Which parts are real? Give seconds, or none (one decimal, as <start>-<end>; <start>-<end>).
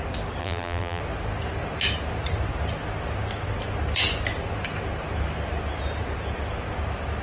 0.0-0.4; 1.0-7.2